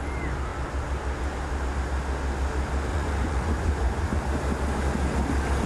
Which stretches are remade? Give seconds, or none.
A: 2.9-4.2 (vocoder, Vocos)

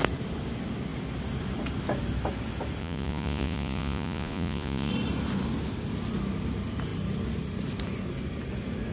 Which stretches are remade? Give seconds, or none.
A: 2.8-4.9 (vocoder, Vocos)

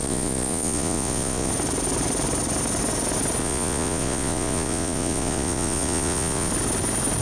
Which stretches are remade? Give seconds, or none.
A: 0.0-1.5 (vocoder, Vocos); 3.4-6.5

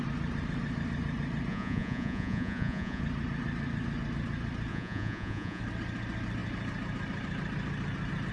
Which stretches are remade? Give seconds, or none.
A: 1.5-3.0 (vocoder, Vocos); 4.7-5.6

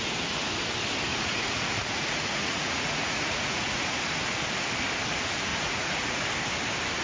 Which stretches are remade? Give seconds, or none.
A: 1.1-3.8 (vocoder, Vocos); 5.5-6.3